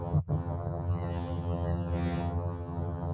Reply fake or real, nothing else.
fake